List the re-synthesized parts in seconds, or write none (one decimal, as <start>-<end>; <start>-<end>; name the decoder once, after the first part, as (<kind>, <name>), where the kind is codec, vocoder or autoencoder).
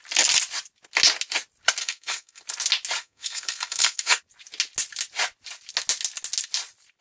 1.8-2.4 (codec, SNAC); 3.0-4.2